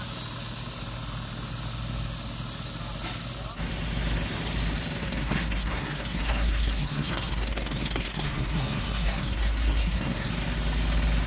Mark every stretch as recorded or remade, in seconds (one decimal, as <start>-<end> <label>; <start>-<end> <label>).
0.0-5.0 recorded; 5.0-10.3 remade; 10.3-11.3 recorded